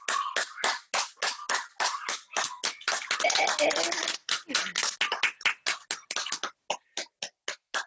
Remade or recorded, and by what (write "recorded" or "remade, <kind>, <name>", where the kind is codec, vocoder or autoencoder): recorded